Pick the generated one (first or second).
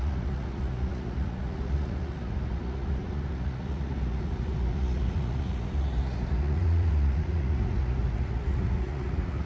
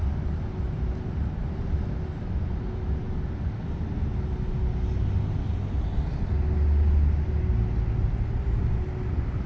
first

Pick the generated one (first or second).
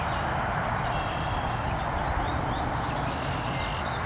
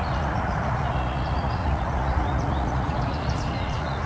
second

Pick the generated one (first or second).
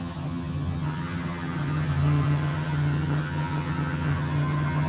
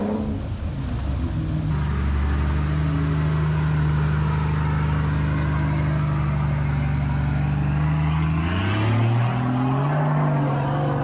first